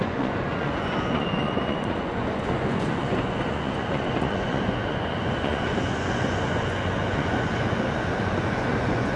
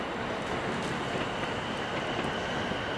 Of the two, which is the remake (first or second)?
first